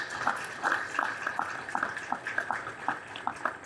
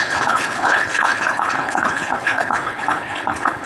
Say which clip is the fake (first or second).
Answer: second